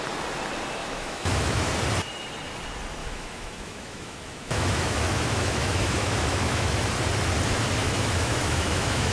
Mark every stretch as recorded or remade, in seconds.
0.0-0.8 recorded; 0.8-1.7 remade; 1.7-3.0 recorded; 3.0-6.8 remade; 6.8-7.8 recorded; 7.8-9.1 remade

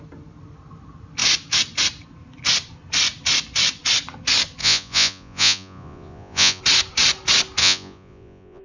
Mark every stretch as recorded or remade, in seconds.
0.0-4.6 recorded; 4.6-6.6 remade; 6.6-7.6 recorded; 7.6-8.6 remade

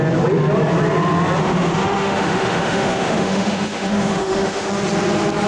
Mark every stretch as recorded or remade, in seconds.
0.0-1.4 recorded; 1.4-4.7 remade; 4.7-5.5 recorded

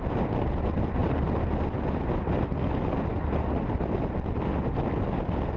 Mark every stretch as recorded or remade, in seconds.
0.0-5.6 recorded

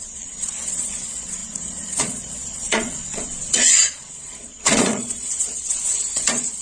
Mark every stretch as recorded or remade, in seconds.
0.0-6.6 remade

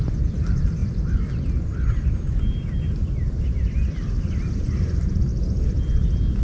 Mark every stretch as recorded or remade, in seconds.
0.0-6.4 recorded

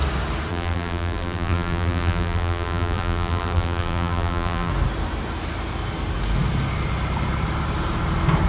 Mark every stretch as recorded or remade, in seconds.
0.0-0.5 recorded; 0.5-4.7 remade; 4.7-8.5 recorded